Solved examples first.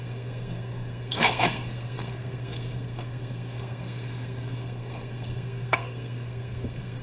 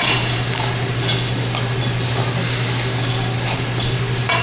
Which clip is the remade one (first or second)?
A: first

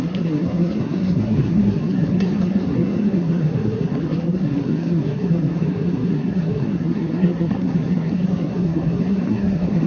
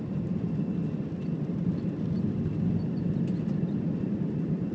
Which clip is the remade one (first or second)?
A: first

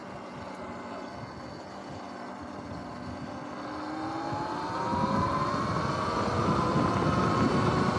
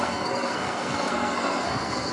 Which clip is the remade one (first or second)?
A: second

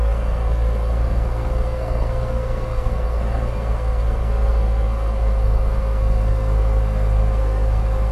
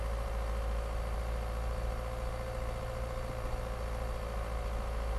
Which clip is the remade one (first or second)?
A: first